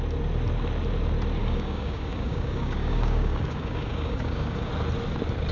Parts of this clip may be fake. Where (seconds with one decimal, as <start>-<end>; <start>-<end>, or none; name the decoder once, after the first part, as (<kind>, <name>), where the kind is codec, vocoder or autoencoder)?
1.4-4.7 (codec, DAC)